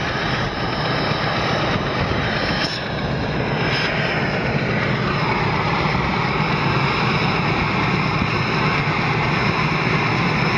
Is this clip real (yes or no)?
yes